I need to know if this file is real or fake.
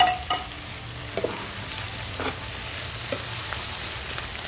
real